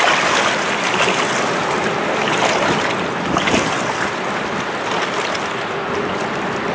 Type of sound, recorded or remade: recorded